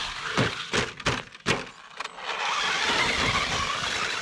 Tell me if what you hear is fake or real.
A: real